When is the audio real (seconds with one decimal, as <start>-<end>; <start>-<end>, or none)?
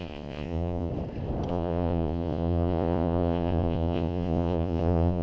0.9-1.5